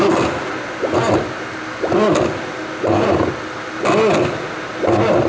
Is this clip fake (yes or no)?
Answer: no